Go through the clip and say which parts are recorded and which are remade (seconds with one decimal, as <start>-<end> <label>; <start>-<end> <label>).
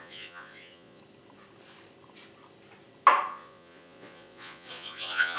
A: 0.0-1.0 remade; 1.0-3.3 recorded; 3.3-5.4 remade